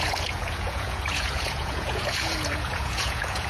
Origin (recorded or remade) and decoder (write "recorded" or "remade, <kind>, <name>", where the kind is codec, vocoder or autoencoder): remade, vocoder, Vocos